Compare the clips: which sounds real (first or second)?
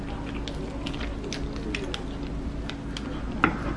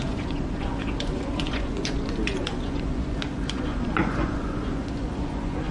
first